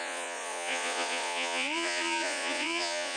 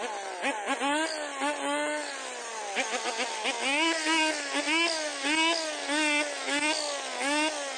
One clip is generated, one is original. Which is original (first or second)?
second